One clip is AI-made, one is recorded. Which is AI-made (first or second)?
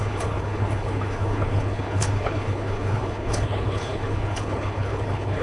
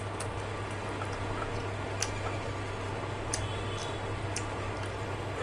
first